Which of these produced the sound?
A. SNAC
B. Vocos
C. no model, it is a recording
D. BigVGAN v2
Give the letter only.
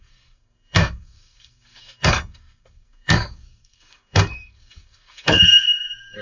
A